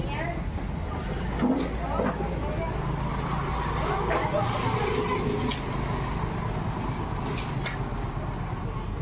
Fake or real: real